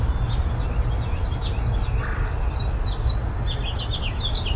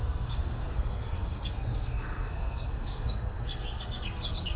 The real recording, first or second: first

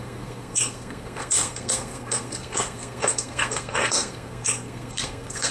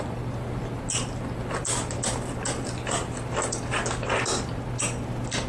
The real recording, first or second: second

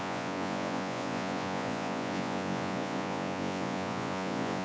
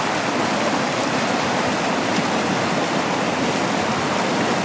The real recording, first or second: second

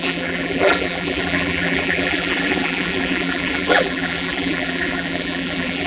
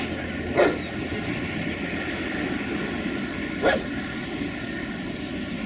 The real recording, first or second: second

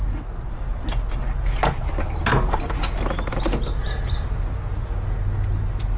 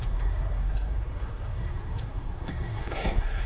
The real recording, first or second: first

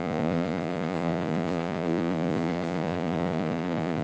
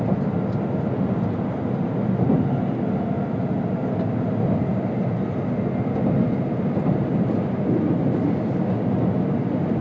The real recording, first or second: second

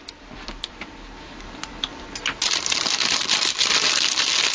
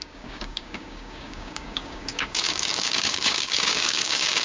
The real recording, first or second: first